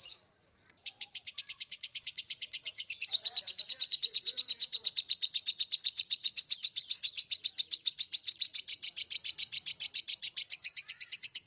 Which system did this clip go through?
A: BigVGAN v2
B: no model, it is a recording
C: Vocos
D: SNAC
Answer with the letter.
C